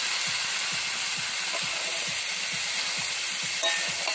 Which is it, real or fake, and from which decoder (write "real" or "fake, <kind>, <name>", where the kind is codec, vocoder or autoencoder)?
real